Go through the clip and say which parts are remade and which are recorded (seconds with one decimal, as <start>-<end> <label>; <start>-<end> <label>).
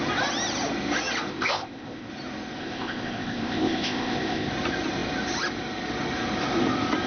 0.0-1.3 recorded; 1.3-2.1 remade; 2.1-2.6 recorded; 2.6-4.5 remade; 4.5-7.1 recorded